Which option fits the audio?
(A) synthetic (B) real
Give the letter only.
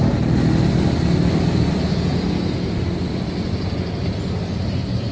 B